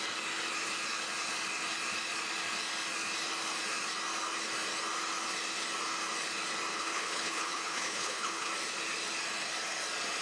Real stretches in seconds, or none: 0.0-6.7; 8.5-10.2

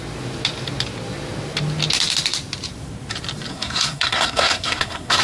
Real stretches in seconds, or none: 0.0-3.5

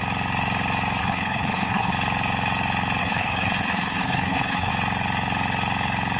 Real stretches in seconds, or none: 0.0-1.0; 1.9-3.0; 4.7-6.2

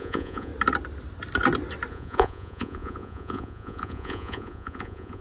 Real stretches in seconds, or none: 0.5-1.9

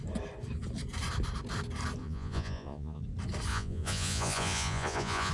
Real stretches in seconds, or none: 0.0-2.0; 3.0-3.5

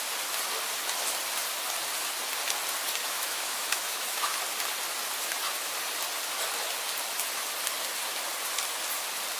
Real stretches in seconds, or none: 0.0-3.0; 4.4-9.4

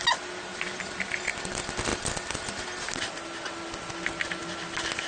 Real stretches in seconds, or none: 0.0-5.1